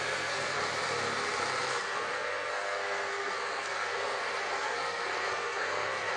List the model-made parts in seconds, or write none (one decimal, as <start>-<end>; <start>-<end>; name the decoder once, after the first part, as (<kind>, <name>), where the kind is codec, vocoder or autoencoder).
0.0-0.6 (codec, SNAC); 1.6-6.2